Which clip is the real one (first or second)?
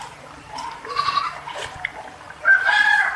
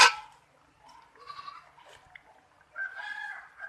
second